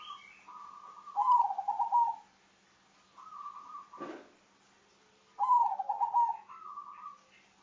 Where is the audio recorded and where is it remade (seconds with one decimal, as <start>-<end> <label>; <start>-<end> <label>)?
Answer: 0.0-7.6 recorded